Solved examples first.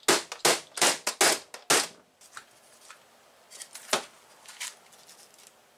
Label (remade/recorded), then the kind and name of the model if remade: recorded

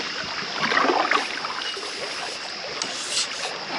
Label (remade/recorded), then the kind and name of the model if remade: recorded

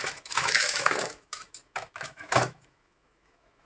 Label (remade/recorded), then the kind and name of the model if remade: remade, autoencoder, DAC-VAE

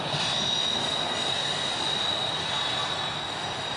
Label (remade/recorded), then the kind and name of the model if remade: recorded